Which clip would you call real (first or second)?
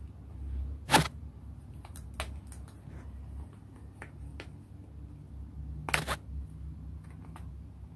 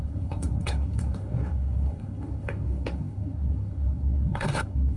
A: first